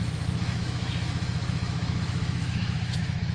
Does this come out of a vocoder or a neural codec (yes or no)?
yes